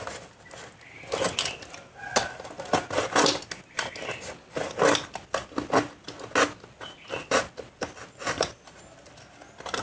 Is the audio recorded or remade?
recorded